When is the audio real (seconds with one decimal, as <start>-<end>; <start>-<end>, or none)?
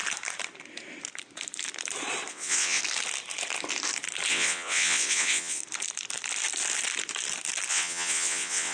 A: 0.0-2.3; 2.8-4.3; 5.6-7.7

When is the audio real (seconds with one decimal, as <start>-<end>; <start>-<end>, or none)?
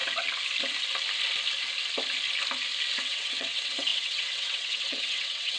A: 0.0-2.9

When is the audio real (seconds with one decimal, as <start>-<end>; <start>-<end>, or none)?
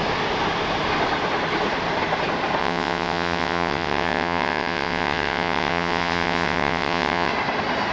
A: 0.0-2.6; 7.3-7.9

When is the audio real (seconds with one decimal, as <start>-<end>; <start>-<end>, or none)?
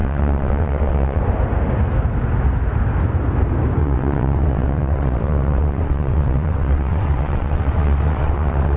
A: 1.2-3.8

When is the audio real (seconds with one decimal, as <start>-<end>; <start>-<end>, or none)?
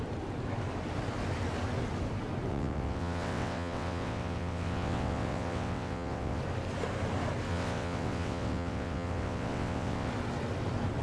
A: 0.0-2.5; 6.4-7.5; 10.1-11.0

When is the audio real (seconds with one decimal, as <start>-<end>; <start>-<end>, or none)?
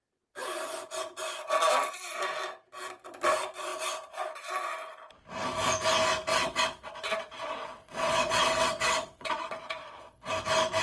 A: 0.0-6.3; 10.3-10.8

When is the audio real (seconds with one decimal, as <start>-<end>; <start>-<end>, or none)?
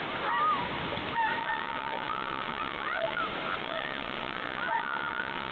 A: 0.0-1.4; 3.2-3.6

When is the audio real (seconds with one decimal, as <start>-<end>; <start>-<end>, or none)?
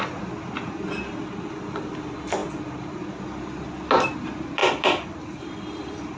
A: 0.0-6.2